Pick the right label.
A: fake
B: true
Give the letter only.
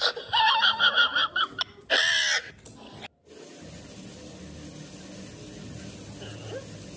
B